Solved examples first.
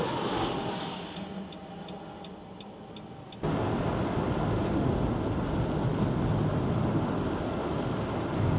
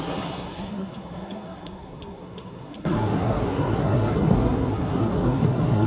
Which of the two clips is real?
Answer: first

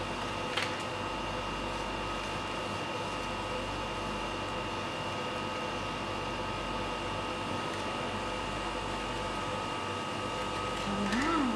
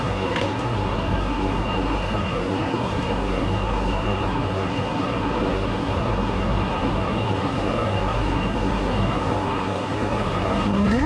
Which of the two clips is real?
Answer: first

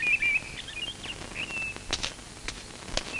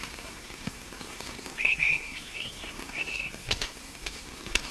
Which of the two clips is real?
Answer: first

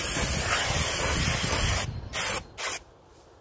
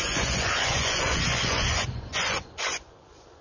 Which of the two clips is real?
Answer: first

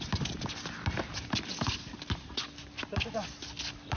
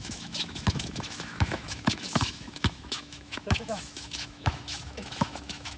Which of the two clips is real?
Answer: first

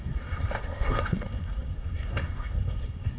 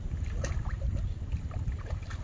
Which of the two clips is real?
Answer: second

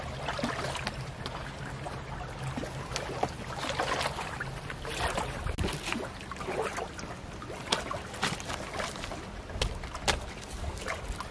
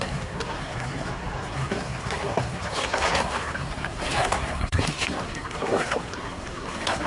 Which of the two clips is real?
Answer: first